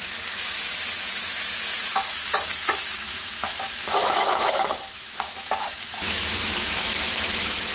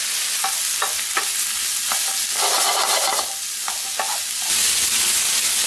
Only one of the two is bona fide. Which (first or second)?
second